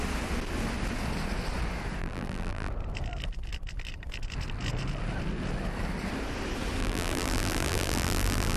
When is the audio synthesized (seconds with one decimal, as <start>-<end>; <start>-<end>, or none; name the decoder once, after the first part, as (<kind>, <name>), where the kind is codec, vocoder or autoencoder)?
2.0-2.7 (vocoder, BigVGAN v2); 6.8-8.6